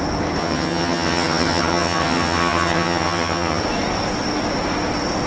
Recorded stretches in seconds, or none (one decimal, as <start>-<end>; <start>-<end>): 0.0-0.4; 3.6-5.3